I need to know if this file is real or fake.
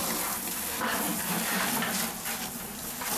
real